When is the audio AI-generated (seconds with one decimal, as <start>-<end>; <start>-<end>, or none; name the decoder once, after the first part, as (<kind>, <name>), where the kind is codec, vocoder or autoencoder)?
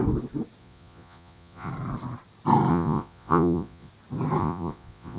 0.6-1.7 (vocoder, Vocos); 2.7-3.9; 4.4-5.2